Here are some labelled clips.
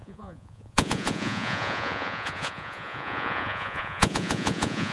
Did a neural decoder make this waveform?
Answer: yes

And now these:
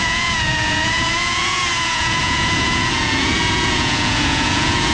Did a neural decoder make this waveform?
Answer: yes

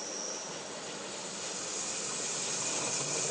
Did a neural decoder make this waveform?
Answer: no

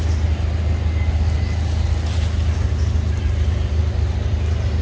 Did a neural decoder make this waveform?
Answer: no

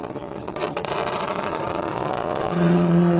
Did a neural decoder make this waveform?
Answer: yes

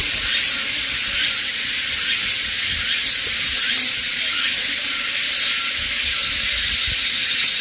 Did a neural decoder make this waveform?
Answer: no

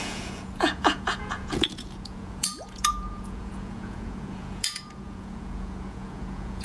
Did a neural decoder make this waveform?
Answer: yes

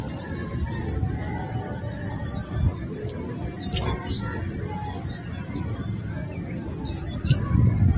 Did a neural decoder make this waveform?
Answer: no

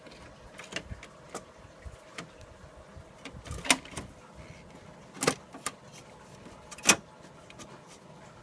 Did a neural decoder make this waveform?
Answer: no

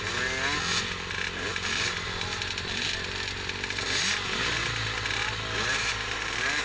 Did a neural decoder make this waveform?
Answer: no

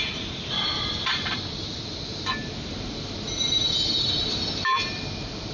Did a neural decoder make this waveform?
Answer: no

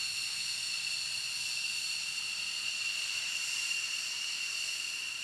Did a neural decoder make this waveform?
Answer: no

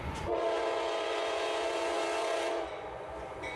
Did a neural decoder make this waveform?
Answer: yes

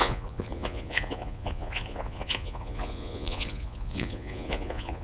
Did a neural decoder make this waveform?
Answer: yes